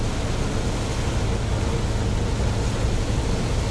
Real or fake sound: real